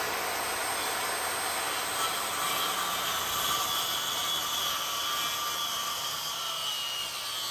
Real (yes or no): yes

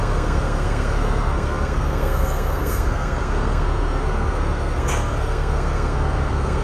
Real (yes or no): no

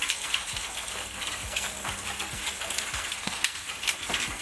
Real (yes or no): no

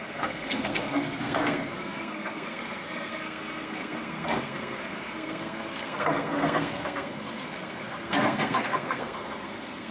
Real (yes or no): no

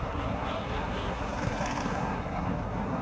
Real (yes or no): no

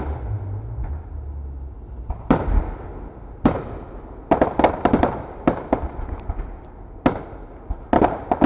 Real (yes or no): yes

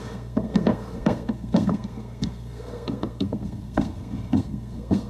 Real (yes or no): no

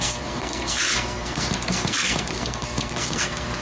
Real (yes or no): no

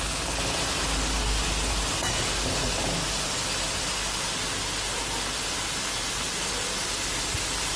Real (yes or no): yes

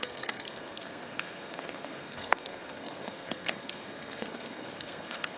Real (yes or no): no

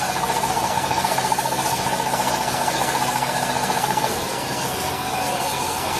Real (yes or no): no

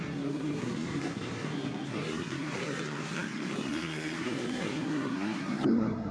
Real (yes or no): no